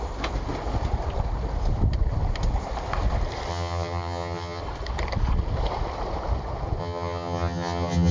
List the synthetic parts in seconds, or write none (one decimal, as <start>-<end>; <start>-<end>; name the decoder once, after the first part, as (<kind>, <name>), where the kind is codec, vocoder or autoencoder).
3.5-4.6 (vocoder, HiFi-GAN); 6.8-8.1